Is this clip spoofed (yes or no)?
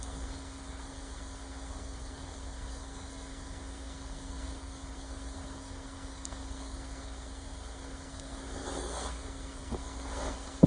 yes